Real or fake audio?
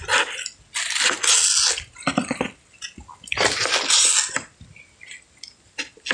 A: real